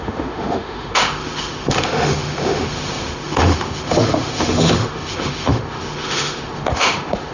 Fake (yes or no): yes